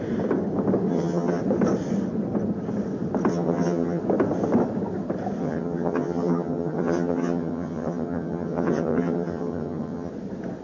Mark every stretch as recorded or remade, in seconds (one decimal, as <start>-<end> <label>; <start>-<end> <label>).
0.0-0.9 recorded; 0.9-1.4 remade; 1.4-3.3 recorded; 3.3-4.0 remade; 4.0-5.4 recorded; 5.4-10.1 remade; 10.1-10.6 recorded